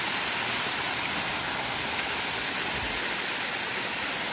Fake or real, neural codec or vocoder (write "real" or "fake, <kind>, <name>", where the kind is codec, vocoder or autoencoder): fake, vocoder, BigVGAN v2